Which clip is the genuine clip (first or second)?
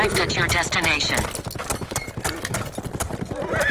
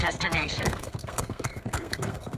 first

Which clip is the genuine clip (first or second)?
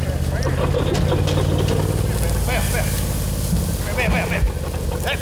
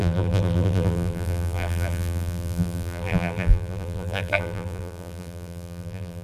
first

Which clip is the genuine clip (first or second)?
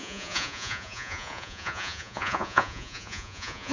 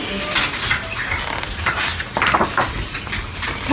second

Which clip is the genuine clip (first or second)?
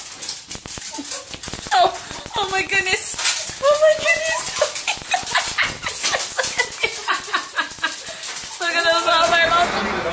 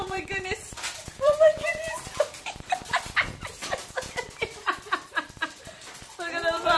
first